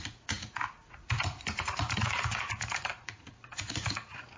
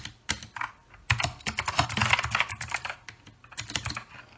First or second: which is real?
second